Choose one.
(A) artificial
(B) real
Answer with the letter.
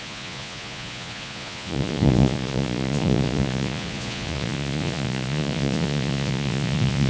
A